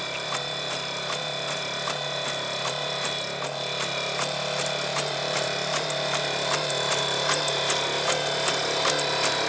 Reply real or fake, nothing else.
fake